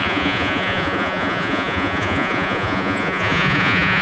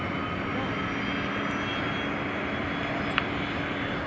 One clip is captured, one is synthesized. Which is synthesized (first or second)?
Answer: first